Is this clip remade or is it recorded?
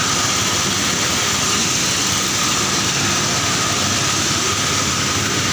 recorded